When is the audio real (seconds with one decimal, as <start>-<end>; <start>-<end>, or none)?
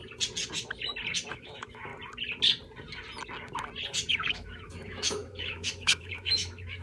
0.0-1.3; 1.9-4.1